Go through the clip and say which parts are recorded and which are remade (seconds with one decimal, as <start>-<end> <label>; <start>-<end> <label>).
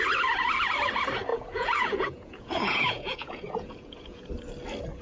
0.0-1.3 recorded; 1.3-4.3 remade; 4.3-5.0 recorded